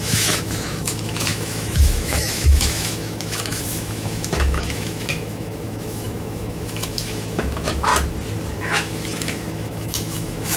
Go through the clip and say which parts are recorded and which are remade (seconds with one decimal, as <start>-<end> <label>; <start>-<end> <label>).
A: 0.0-7.9 remade; 7.9-8.6 recorded; 8.6-10.6 remade